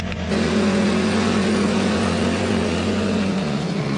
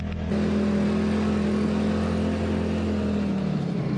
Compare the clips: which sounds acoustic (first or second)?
second